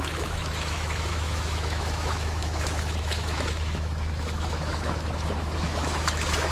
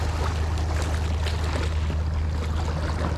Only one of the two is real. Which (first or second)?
second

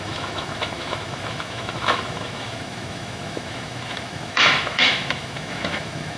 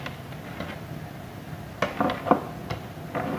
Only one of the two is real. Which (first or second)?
second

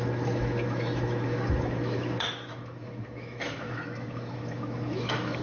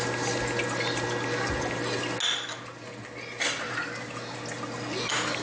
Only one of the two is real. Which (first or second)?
second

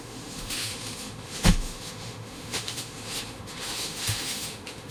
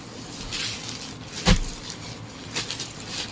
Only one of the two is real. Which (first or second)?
second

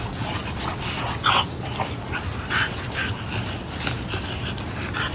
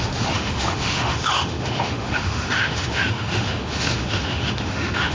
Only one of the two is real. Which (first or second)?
first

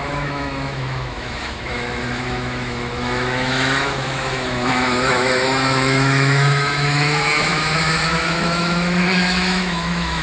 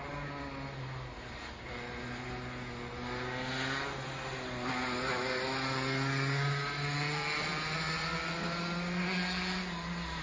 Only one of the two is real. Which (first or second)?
second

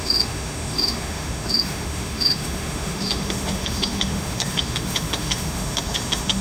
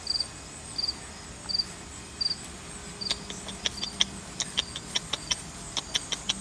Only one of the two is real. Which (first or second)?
second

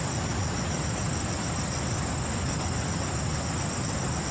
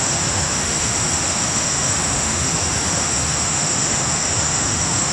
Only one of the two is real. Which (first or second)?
first